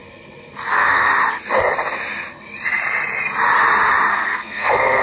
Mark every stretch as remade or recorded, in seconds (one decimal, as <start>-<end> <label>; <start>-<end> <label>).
0.0-0.7 recorded; 0.7-1.1 remade; 1.1-4.1 recorded; 4.1-5.0 remade